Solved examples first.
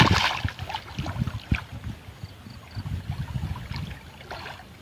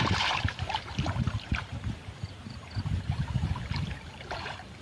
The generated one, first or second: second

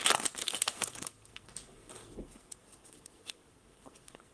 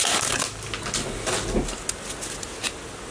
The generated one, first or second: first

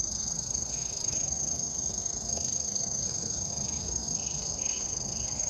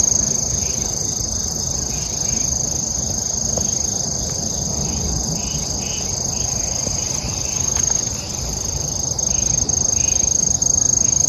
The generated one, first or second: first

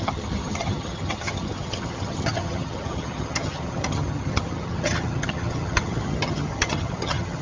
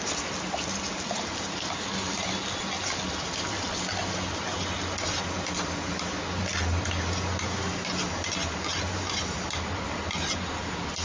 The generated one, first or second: first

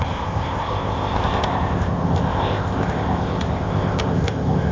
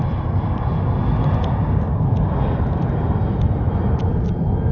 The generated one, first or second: first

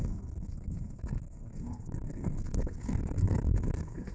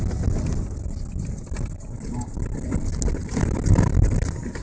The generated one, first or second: first